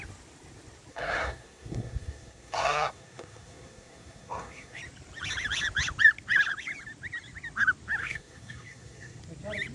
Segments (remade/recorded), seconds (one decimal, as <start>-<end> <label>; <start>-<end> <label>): 0.0-0.9 recorded; 0.9-4.8 remade; 4.8-8.0 recorded; 8.0-9.2 remade; 9.2-9.7 recorded